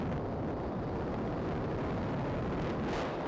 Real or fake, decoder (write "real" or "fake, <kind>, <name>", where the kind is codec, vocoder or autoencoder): real